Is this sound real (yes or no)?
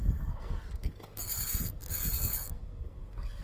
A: no